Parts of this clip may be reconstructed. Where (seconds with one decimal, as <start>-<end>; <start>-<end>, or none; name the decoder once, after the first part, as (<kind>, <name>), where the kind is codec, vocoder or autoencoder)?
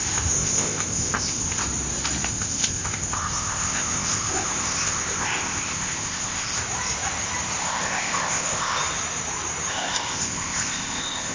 0.0-1.6 (codec, ZipCodec); 2.3-6.6; 7.6-8.8; 9.7-11.3